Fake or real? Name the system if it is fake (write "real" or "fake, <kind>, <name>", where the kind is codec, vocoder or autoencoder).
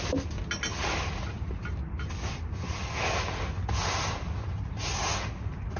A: real